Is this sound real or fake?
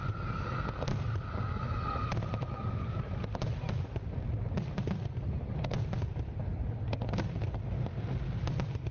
real